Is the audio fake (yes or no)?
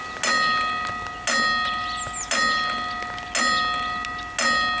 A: no